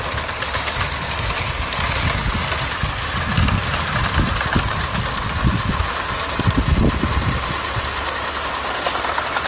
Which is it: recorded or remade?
recorded